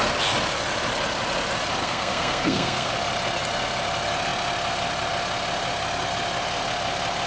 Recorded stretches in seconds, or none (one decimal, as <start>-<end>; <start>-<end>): 0.0-1.8; 2.9-7.3